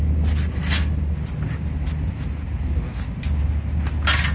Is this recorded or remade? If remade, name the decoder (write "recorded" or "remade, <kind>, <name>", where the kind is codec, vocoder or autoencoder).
recorded